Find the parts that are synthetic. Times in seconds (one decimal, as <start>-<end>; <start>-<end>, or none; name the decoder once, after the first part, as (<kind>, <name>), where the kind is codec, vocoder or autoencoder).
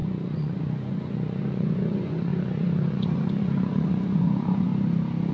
0.0-4.7 (vocoder, Vocos)